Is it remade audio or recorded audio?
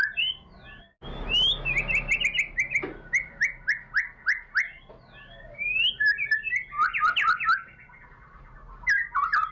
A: recorded